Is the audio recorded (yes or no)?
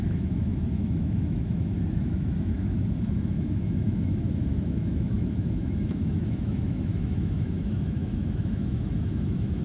no